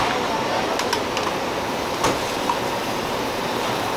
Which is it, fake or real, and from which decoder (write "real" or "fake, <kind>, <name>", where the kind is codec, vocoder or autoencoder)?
fake, vocoder, BigVGAN v2